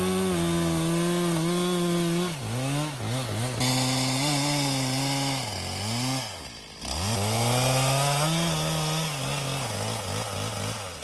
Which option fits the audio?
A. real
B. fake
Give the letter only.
A